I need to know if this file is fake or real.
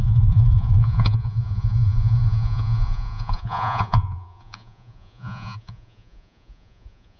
fake